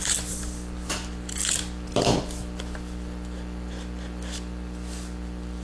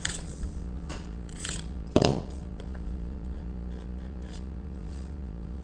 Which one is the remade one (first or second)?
second